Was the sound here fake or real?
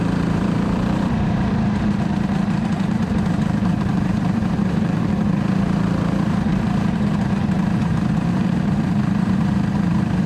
fake